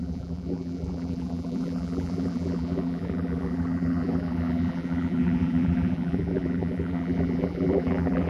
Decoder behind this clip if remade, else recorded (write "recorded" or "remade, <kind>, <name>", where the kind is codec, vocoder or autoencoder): remade, vocoder, BigVGAN v2